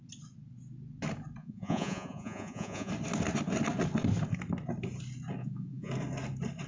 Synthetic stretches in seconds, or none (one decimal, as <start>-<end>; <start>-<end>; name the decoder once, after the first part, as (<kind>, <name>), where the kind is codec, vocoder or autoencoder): 1.4-2.9 (vocoder, Vocos); 5.4-5.9